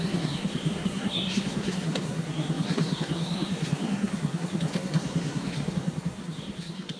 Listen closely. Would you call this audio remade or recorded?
remade